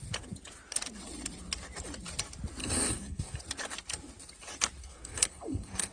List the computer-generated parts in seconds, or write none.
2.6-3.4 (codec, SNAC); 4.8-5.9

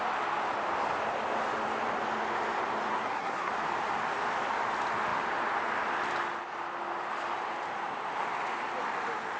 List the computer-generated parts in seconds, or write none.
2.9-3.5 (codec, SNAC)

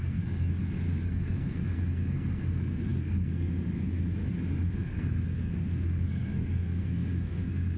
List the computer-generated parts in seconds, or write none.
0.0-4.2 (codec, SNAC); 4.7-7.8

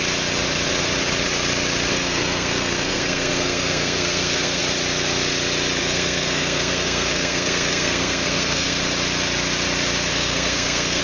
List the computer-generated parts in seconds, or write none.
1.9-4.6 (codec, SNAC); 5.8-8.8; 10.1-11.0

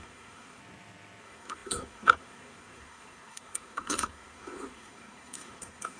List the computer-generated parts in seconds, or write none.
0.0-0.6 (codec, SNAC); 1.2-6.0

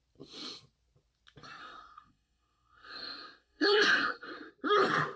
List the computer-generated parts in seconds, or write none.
1.6-4.5 (codec, SNAC)